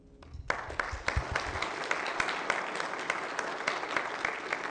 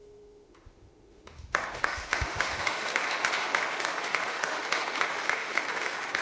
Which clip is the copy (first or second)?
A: second